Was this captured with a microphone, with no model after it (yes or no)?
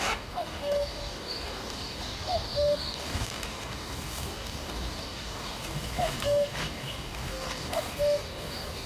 no